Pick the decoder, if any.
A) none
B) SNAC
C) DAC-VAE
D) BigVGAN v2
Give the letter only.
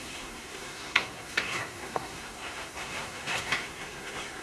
B